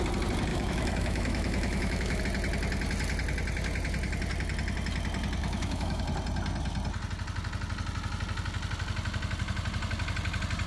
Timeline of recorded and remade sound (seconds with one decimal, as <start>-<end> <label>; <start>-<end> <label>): 0.0-0.5 recorded; 0.5-2.2 remade; 2.2-5.4 recorded; 5.4-6.0 remade; 6.0-10.7 recorded